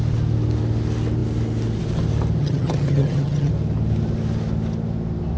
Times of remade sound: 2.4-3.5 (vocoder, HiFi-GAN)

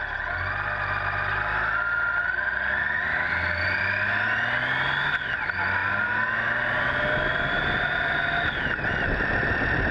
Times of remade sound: none

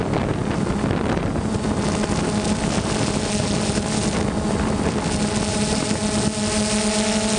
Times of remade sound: 5.5-6.0 (vocoder, BigVGAN v2)